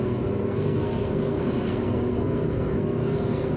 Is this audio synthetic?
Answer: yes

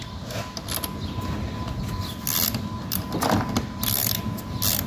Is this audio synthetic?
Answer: no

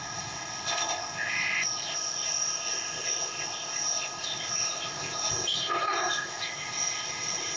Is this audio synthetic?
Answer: yes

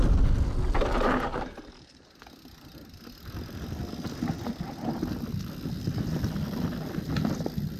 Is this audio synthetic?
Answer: no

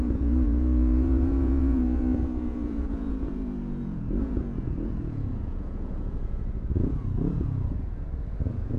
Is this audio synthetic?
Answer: yes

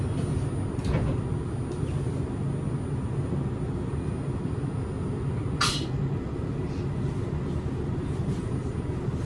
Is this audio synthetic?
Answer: no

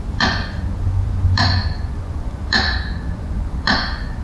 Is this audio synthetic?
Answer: yes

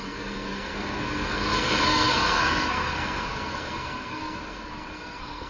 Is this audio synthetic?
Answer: yes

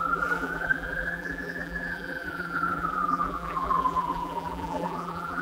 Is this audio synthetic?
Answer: yes